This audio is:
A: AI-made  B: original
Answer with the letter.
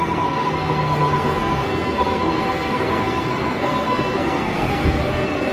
A